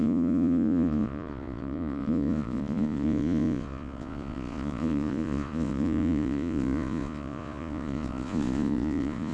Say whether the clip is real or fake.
fake